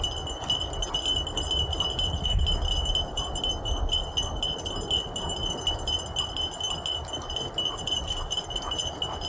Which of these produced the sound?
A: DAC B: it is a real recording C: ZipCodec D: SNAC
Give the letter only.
B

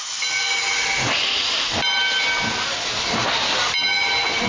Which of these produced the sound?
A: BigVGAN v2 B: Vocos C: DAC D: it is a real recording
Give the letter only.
D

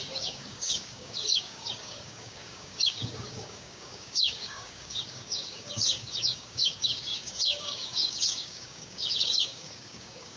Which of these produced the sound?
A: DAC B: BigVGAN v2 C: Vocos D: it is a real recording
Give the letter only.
A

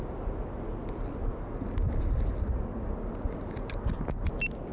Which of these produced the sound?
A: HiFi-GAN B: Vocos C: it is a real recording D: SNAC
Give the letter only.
C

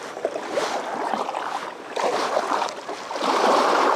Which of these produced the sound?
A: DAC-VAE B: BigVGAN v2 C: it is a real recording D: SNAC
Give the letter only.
C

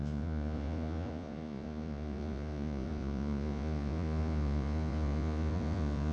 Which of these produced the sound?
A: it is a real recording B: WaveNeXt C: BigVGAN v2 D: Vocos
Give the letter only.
D